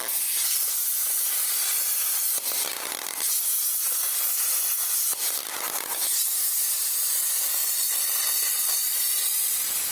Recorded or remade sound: recorded